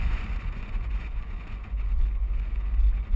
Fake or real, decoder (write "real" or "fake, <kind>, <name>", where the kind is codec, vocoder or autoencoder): fake, vocoder, Vocos